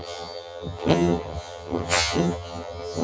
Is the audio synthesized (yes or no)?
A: yes